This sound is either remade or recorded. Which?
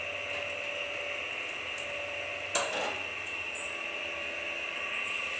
recorded